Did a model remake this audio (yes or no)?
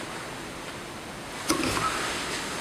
no